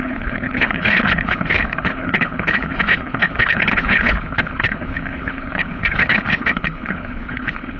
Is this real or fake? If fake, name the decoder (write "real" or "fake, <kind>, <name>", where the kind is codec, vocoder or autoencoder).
fake, codec, HILCodec